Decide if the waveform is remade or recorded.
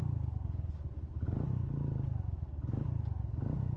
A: recorded